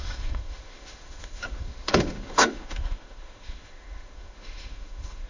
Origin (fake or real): fake